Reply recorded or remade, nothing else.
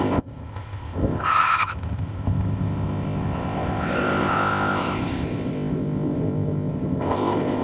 remade